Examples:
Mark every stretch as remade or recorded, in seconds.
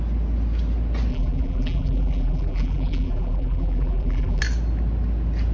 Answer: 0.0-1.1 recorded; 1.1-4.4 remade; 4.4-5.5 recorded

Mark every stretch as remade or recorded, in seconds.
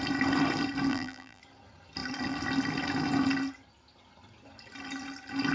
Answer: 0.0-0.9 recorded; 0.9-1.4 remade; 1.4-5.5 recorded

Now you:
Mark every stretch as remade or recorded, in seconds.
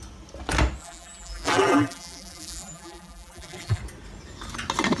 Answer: 0.0-0.8 recorded; 0.8-3.8 remade; 3.8-5.0 recorded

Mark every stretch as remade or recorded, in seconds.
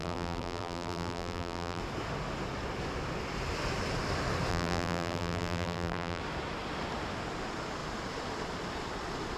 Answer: 0.0-1.8 remade; 1.8-4.5 recorded; 4.5-6.2 remade; 6.2-9.4 recorded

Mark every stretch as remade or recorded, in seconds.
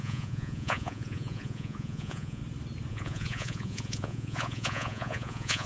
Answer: 0.0-2.4 remade; 2.4-2.9 recorded; 2.9-5.7 remade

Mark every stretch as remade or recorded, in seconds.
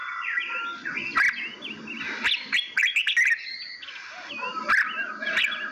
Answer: 0.0-5.7 recorded